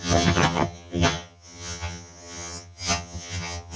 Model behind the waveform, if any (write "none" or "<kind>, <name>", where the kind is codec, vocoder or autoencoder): vocoder, HiFi-GAN